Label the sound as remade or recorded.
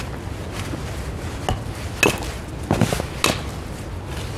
recorded